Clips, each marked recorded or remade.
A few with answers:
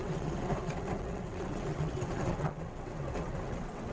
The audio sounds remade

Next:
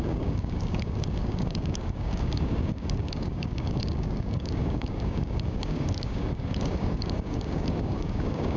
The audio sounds remade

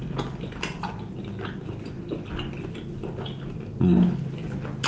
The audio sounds recorded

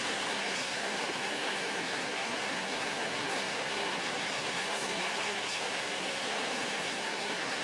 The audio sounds remade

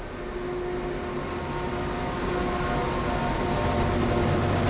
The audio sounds recorded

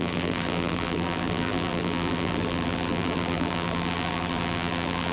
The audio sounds remade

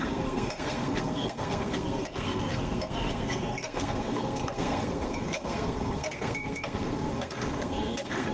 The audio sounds remade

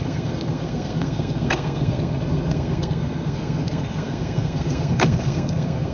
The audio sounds remade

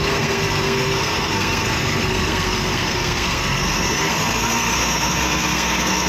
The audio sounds remade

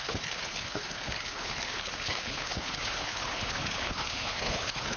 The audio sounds remade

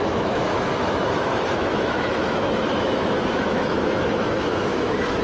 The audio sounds remade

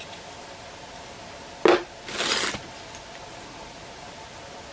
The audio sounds recorded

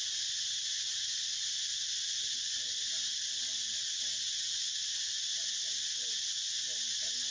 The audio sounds recorded